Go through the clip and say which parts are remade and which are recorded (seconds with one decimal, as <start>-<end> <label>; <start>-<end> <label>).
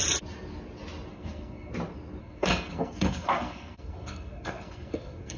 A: 0.0-1.1 recorded; 1.1-1.7 remade; 1.7-2.2 recorded; 2.2-5.4 remade